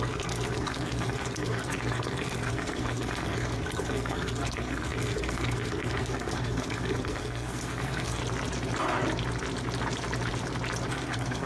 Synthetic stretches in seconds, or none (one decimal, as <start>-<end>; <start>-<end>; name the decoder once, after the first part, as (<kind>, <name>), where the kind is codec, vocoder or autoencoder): 0.0-8.2 (codec, SNAC); 10.9-11.5